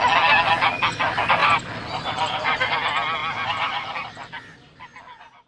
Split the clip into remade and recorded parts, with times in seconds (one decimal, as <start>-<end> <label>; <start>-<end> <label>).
0.0-1.4 recorded; 1.4-2.1 remade; 2.1-3.2 recorded; 3.2-4.3 remade; 4.3-5.5 recorded